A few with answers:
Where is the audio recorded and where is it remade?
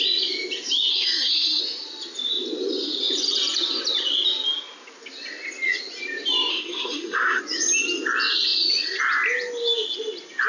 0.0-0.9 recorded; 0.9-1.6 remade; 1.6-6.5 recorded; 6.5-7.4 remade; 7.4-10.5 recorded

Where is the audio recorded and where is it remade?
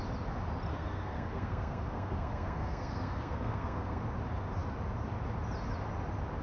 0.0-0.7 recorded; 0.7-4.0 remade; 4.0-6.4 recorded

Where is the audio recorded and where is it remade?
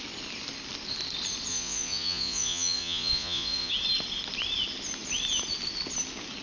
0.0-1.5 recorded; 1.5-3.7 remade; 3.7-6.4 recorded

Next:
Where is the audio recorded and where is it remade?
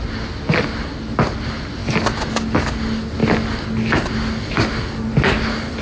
0.0-5.8 recorded